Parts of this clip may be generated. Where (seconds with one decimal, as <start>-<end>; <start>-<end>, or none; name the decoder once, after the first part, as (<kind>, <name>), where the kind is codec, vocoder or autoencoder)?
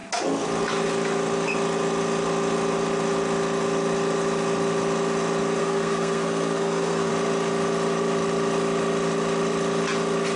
5.6-7.1 (codec, SNAC)